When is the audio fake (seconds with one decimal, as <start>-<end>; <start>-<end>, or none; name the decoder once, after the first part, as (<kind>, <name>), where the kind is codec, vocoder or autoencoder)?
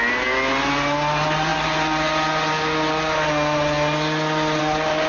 none